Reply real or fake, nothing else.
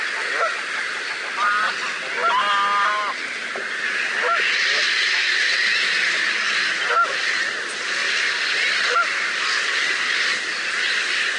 real